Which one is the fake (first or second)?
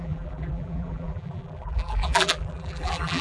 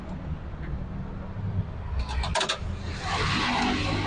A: first